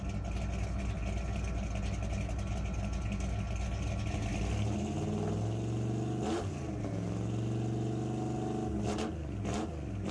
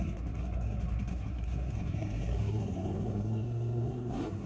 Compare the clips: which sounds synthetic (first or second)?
second